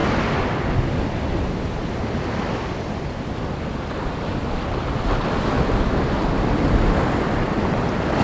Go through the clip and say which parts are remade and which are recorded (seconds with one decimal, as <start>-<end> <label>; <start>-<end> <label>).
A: 0.0-8.2 recorded